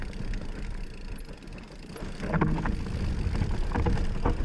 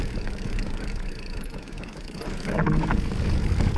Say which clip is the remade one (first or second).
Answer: second